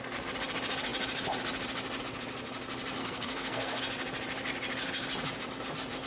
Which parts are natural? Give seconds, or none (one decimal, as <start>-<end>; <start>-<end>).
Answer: 0.0-3.0; 3.8-6.1